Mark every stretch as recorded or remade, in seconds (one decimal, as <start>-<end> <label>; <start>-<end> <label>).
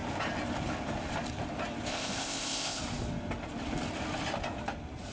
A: 0.0-1.9 recorded; 1.9-2.8 remade; 2.8-5.1 recorded